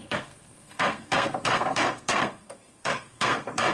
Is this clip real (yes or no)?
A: no